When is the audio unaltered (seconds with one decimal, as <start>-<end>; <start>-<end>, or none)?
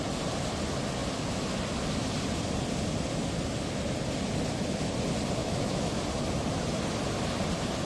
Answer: 0.0-5.4; 6.0-7.8